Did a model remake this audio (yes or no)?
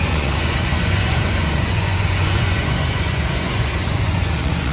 yes